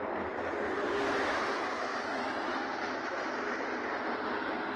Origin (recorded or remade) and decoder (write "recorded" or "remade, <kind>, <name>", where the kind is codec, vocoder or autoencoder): recorded